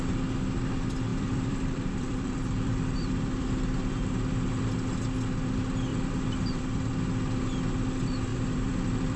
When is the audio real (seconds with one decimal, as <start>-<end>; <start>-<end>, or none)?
0.0-1.1; 4.0-5.9; 6.9-8.3

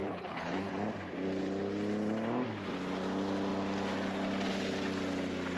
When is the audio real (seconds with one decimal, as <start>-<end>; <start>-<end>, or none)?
0.7-5.6

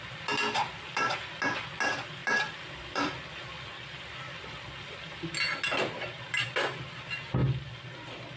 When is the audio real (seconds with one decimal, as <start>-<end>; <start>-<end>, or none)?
0.0-2.2; 3.4-7.4

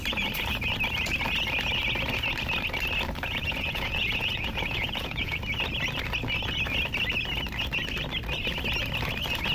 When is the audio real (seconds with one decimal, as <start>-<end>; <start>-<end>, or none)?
0.0-3.3; 5.4-9.5

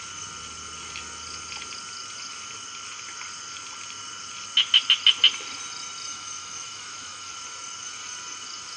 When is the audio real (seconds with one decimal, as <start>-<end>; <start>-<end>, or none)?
0.0-6.1; 7.3-8.8

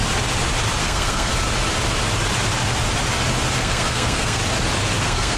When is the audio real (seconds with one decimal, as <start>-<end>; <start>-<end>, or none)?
0.0-0.8; 1.3-3.6; 4.4-5.0

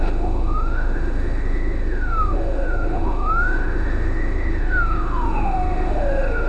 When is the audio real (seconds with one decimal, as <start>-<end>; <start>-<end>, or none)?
none